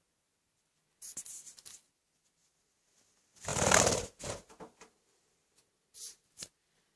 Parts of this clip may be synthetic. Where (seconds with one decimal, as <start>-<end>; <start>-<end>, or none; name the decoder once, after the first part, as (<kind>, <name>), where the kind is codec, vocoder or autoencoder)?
none